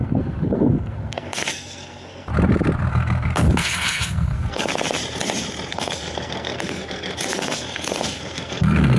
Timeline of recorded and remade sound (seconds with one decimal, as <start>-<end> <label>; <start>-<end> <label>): 0.0-2.3 remade; 2.3-2.9 recorded; 2.9-4.7 remade; 4.7-5.7 recorded; 5.7-9.0 remade